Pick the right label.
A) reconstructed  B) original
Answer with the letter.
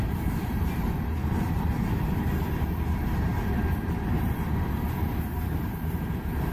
A